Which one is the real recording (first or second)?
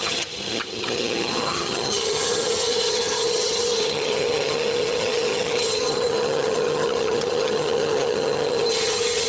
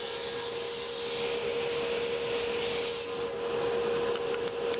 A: second